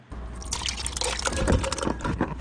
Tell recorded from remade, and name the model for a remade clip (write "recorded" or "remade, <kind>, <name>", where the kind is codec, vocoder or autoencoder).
recorded